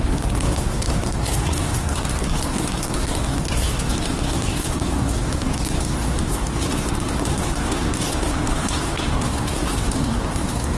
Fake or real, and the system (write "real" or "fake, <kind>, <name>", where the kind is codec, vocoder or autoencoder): fake, codec, SNAC